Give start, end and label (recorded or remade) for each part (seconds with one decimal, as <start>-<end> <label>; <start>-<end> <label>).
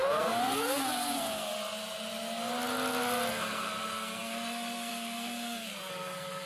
0.0-1.5 remade; 1.5-3.3 recorded; 3.3-6.5 remade